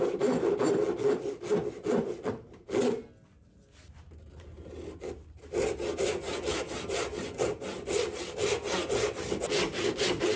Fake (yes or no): no